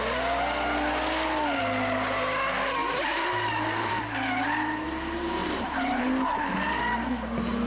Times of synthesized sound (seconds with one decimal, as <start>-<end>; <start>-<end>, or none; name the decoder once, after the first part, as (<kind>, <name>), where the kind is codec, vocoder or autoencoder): 2.8-3.9 (vocoder, BigVGAN v2); 5.4-6.8